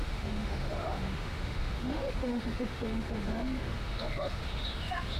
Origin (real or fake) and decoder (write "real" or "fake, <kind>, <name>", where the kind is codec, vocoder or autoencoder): fake, autoencoder, DAC-VAE